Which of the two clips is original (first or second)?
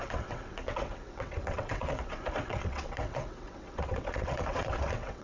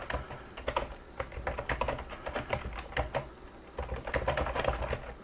second